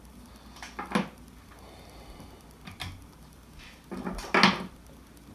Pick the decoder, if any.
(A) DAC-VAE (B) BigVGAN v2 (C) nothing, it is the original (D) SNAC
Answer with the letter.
C